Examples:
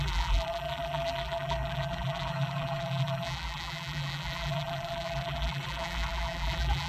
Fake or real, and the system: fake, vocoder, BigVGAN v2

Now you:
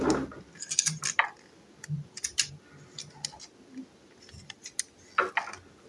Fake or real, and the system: real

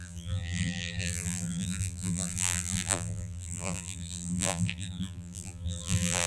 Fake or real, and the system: fake, vocoder, BigVGAN v2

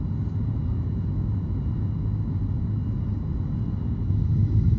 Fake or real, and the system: real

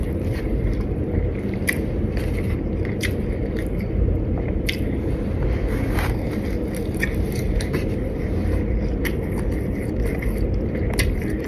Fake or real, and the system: fake, vocoder, BigVGAN v2